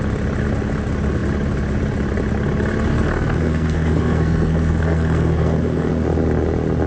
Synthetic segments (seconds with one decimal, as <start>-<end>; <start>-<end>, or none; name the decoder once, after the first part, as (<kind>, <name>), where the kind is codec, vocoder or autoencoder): 2.9-5.9 (codec, SNAC)

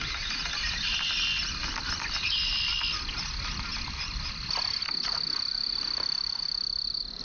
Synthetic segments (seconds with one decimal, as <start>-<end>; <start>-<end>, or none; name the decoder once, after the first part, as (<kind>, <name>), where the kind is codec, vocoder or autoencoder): none